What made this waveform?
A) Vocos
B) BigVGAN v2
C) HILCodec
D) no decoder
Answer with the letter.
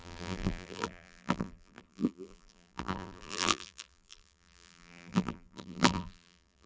B